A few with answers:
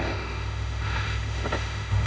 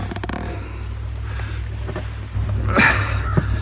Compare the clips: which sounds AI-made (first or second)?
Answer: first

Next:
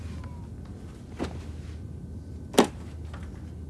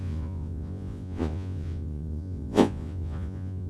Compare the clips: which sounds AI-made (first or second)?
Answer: second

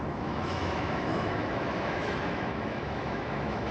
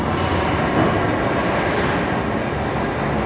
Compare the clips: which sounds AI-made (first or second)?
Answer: first